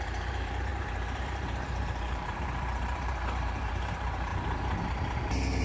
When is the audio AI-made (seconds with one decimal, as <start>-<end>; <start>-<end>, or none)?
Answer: 0.0-4.3